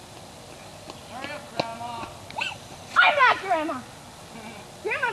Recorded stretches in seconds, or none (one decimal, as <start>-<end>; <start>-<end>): 0.0-5.1